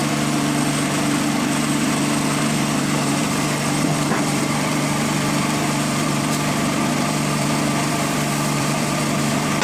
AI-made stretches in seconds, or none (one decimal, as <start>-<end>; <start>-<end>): 2.4-9.6